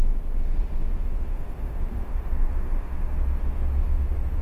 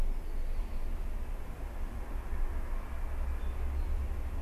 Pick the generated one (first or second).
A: first